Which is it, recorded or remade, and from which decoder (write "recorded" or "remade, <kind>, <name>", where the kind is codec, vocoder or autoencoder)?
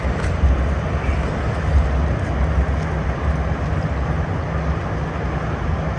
recorded